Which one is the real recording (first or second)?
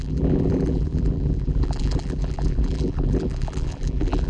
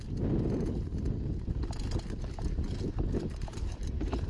second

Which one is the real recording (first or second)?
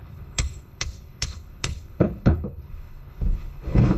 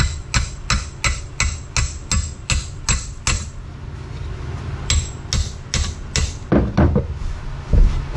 second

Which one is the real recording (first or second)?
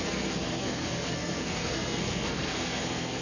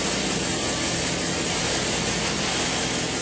second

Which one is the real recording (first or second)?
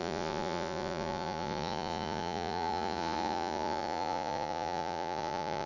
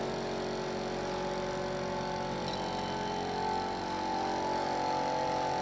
second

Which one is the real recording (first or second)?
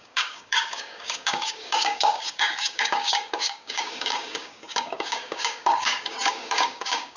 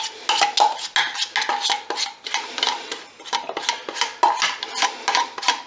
second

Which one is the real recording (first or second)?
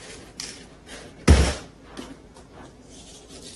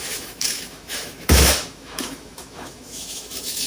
first